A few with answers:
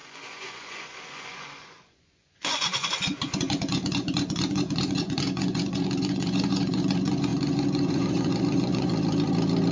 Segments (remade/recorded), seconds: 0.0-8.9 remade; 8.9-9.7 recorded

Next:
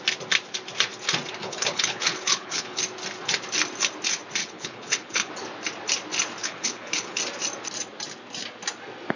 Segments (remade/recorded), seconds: 0.0-1.4 recorded; 1.4-2.8 remade; 2.8-4.4 recorded; 4.4-5.3 remade; 5.3-6.4 recorded; 6.4-7.2 remade; 7.2-9.2 recorded

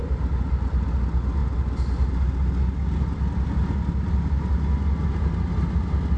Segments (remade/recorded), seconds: 0.0-6.2 recorded

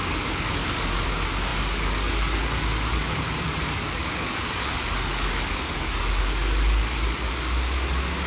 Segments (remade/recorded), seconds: 0.0-8.3 remade